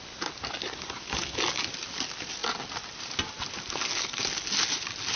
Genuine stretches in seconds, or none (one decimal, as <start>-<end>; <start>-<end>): 0.0-5.2